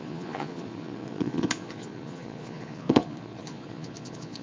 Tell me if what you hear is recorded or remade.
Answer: remade